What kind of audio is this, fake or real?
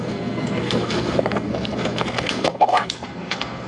fake